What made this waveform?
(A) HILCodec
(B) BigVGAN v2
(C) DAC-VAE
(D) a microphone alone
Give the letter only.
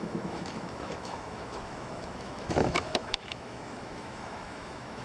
C